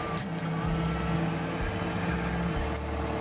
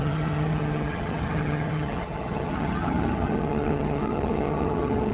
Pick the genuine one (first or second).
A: first